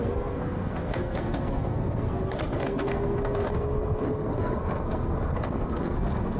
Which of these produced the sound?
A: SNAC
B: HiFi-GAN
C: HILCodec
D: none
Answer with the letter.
A